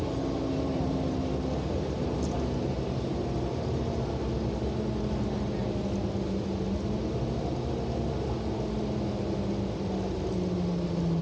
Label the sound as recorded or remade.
recorded